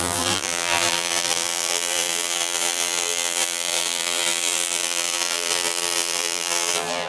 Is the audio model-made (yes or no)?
yes